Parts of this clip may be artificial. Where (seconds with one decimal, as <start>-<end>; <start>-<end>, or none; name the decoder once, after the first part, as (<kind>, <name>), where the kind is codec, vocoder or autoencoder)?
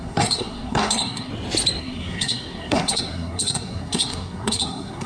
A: 0.0-1.3 (codec, SNAC); 1.8-5.1